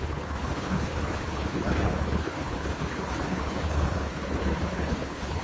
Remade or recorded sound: remade